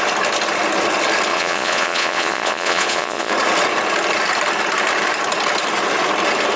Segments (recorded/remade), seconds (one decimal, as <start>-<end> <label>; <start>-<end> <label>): 0.0-1.3 recorded; 1.3-3.3 remade; 3.3-6.6 recorded